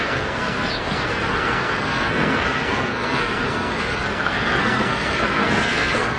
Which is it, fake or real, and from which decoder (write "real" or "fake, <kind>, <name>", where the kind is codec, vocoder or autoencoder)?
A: fake, codec, SNAC